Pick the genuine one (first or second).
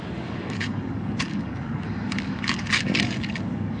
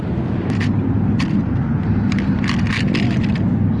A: second